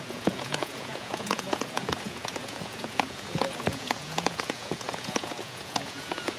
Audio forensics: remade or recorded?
remade